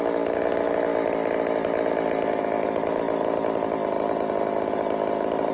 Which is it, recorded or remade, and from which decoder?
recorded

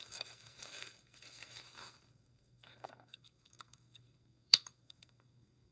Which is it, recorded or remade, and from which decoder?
remade, codec, SNAC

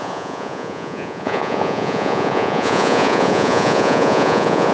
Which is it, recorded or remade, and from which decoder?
remade, vocoder, Vocos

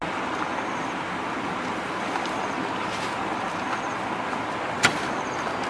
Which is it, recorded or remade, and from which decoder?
recorded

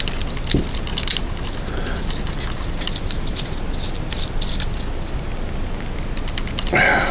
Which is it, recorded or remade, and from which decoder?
recorded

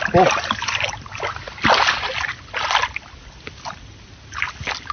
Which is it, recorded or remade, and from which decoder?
recorded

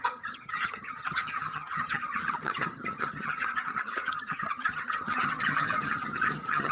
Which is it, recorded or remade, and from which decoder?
remade, vocoder, HiFi-GAN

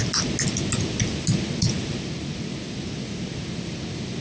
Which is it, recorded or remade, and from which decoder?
recorded